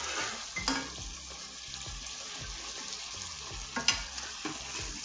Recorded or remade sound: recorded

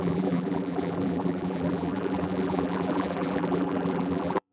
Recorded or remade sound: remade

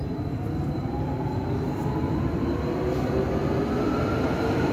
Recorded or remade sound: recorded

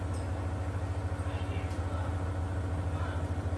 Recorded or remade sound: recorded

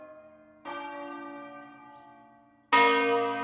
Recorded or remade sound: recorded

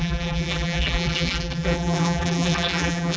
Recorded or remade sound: remade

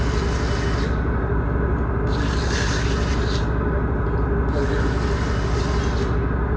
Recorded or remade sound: recorded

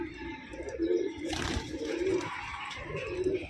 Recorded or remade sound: remade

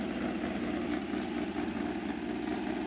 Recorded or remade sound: recorded